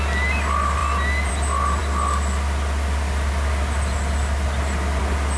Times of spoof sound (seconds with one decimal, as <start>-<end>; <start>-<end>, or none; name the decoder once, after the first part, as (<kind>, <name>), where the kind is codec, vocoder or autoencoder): none